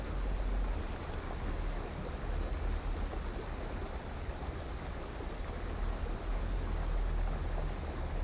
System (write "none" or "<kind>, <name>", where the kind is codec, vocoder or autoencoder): none